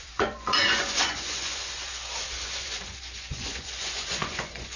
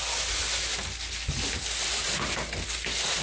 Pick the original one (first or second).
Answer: second